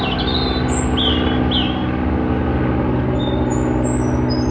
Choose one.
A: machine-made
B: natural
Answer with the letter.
B